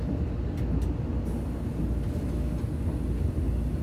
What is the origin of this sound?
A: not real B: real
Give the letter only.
B